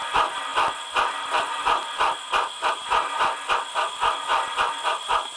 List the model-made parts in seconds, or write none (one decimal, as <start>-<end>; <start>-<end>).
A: none